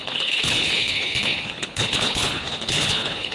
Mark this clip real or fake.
fake